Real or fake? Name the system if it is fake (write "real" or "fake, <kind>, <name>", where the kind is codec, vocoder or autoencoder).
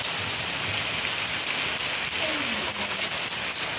real